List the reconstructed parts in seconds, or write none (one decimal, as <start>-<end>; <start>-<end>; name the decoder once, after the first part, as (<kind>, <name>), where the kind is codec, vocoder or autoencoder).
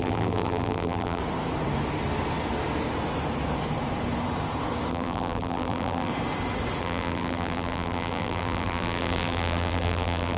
0.0-1.2 (vocoder, BigVGAN v2); 4.9-6.1; 6.8-10.4